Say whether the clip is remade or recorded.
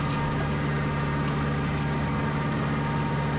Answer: recorded